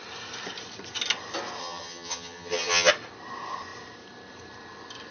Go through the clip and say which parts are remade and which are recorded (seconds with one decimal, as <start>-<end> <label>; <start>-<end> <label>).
0.0-1.6 recorded; 1.6-2.9 remade; 2.9-5.1 recorded